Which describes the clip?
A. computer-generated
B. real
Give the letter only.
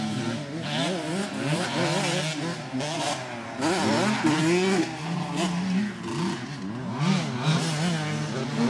B